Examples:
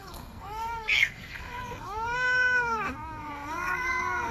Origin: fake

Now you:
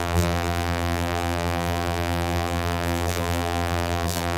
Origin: fake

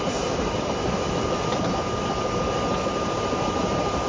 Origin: real